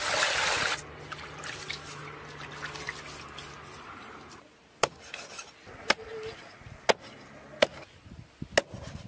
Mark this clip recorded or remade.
recorded